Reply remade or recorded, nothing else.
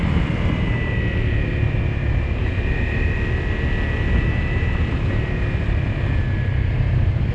recorded